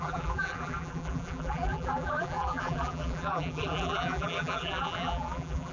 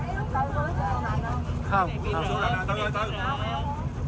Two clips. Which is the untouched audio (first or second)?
second